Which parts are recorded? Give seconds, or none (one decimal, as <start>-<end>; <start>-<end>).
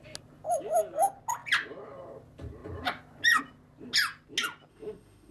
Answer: 0.0-4.7